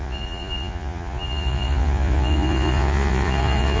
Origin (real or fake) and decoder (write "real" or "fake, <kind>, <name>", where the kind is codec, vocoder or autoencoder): fake, vocoder, Vocos